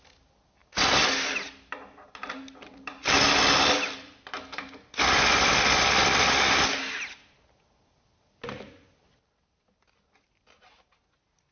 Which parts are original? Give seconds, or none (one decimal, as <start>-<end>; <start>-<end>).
0.0-11.5